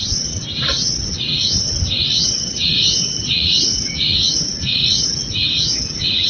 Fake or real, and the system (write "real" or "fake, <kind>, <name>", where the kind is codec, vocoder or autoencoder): fake, vocoder, WaveNeXt